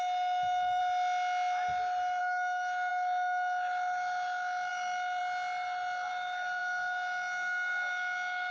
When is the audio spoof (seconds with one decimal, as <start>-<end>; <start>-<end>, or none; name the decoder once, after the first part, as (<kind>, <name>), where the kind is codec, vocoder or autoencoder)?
0.0-0.8 (autoencoder, DAC-VAE); 2.2-5.2; 6.1-8.5

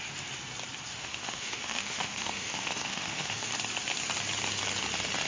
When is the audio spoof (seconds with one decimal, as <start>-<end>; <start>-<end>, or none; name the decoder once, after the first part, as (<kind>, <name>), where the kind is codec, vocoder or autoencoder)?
0.9-3.5 (autoencoder, DAC-VAE)

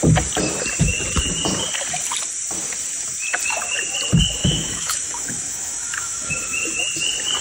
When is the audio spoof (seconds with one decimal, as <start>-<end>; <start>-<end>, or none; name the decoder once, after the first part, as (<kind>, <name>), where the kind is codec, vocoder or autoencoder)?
4.4-6.3 (autoencoder, DAC-VAE)

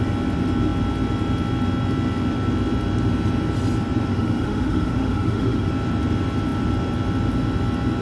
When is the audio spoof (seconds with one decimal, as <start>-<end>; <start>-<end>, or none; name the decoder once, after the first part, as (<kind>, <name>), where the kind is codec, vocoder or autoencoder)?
4.1-5.7 (autoencoder, DAC-VAE)